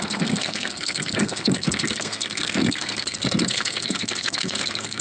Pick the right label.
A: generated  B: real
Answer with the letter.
A